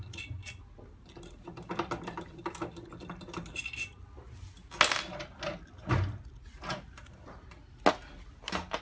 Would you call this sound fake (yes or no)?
no